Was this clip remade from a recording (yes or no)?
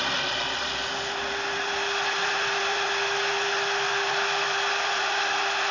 no